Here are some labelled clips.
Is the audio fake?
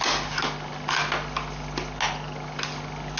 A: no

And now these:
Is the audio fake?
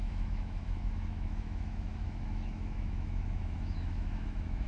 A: yes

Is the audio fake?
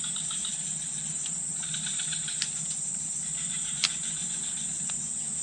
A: no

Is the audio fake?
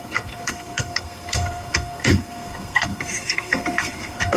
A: yes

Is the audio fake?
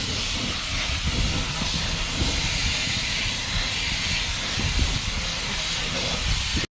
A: no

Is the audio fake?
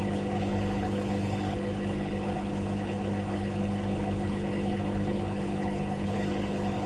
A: yes